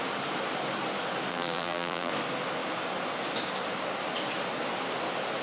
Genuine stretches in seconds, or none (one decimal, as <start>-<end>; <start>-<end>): 0.0-1.3; 2.1-5.4

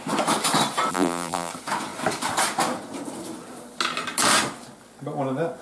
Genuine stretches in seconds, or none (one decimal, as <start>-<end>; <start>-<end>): 0.0-0.9; 1.5-5.6

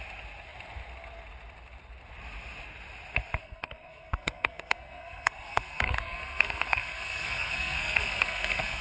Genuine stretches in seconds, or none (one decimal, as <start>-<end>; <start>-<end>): 0.0-3.4

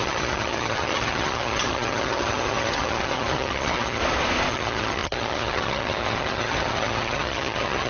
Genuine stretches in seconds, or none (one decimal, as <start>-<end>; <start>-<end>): 4.0-4.5

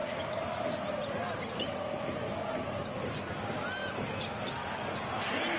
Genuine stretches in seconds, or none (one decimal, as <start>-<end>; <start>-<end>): 0.0-5.6